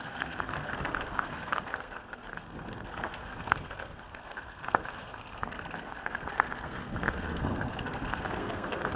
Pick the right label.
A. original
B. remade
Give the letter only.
B